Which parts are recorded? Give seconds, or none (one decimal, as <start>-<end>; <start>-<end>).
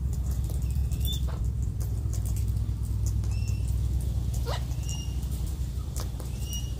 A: 2.4-5.3